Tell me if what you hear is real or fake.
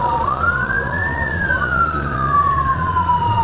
fake